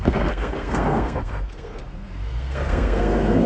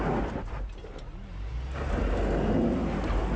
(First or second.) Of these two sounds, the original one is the second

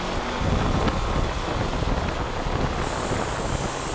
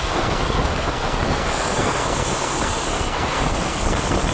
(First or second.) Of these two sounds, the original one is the first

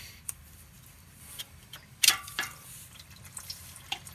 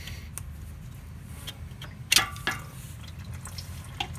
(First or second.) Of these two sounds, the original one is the second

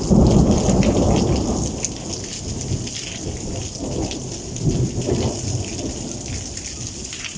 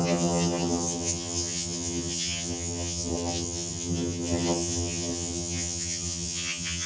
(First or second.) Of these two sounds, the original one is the first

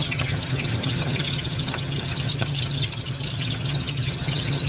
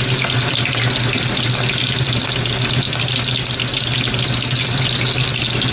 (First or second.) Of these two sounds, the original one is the second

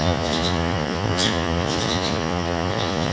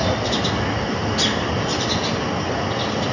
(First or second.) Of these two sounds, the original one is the second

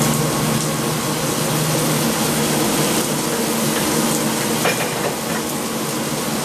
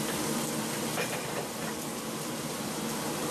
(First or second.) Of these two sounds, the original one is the first